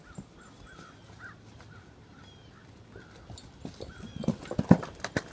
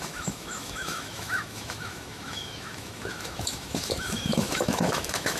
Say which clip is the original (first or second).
first